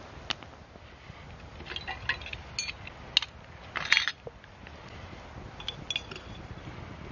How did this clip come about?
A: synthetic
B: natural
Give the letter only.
B